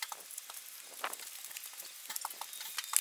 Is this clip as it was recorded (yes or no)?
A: yes